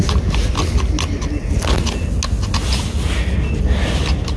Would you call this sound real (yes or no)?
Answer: yes